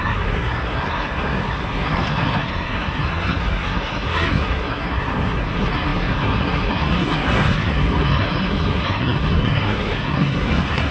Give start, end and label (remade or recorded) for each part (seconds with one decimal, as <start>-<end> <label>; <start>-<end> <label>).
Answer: 0.0-10.9 remade